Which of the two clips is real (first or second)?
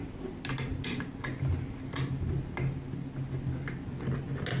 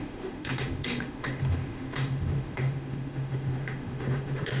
first